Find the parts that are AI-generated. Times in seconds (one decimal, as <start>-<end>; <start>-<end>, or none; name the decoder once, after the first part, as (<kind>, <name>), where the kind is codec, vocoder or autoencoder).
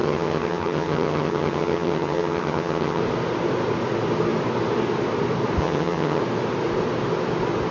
0.0-3.0 (vocoder, HiFi-GAN); 5.6-6.2